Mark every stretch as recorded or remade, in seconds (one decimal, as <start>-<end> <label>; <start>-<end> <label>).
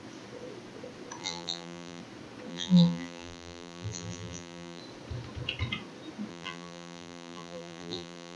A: 0.0-1.2 recorded; 1.2-2.0 remade; 2.0-2.5 recorded; 2.5-4.8 remade; 4.8-6.3 recorded; 6.3-8.4 remade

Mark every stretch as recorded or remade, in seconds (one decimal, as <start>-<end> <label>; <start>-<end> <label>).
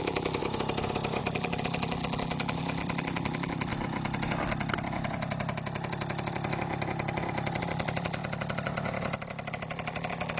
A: 0.0-0.4 remade; 0.4-1.2 recorded; 1.2-3.7 remade; 3.7-7.6 recorded; 7.6-8.2 remade; 8.2-9.5 recorded; 9.5-10.4 remade